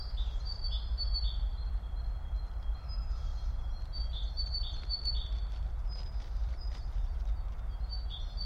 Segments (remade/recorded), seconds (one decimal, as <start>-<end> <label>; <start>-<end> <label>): 0.0-1.5 recorded; 1.5-2.0 remade; 2.0-6.4 recorded; 6.4-7.5 remade; 7.5-8.5 recorded